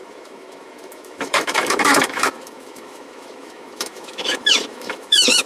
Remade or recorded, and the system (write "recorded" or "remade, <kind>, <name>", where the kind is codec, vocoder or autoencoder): remade, autoencoder, DAC-VAE